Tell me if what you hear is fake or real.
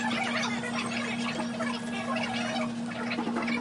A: real